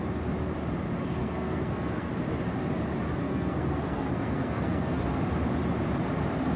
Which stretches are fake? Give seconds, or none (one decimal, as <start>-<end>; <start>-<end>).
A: 1.2-2.1; 3.2-5.0

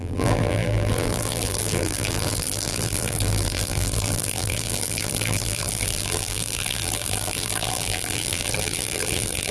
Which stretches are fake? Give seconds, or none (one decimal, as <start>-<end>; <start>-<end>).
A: 0.0-9.5